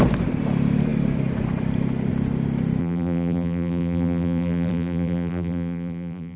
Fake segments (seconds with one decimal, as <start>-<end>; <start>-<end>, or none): 2.8-6.4